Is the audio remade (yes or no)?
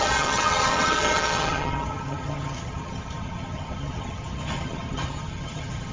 yes